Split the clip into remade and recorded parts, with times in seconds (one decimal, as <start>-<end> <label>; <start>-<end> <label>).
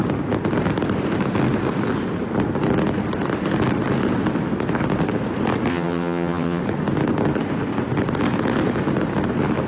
0.0-5.7 recorded; 5.7-6.6 remade; 6.6-9.7 recorded